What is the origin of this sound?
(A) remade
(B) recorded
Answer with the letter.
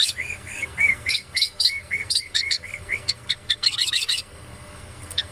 A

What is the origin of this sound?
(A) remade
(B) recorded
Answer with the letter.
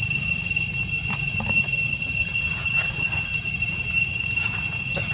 A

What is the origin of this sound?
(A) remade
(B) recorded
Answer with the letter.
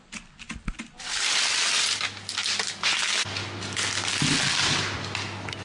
B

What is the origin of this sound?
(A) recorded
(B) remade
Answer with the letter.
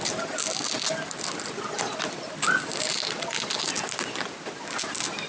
A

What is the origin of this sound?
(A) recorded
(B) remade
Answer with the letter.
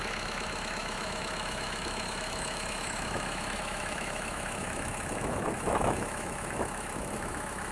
B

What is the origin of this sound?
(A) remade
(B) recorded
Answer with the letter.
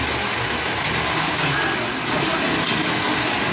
B